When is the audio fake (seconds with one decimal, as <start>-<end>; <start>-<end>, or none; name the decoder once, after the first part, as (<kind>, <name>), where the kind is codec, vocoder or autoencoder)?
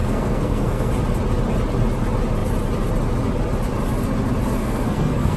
0.0-0.9 (codec, SNAC); 4.6-5.4